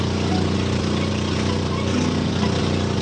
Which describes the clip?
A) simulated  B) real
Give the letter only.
B